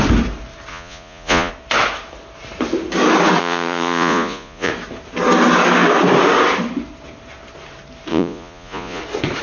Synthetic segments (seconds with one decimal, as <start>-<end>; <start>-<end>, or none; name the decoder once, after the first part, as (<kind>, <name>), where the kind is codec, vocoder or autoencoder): 0.7-1.5 (vocoder, Vocos); 3.4-4.7; 8.1-9.0